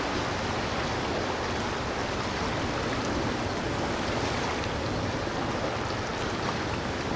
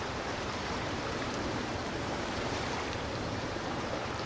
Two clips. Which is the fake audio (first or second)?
second